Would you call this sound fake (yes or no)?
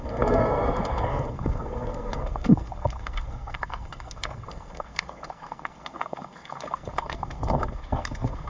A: yes